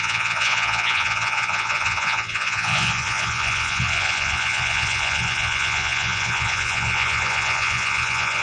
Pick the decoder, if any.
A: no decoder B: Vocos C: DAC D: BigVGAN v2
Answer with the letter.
B